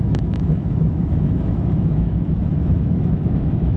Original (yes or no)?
no